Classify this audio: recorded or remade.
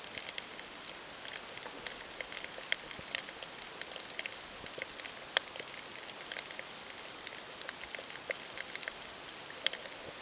recorded